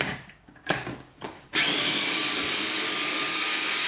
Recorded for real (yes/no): no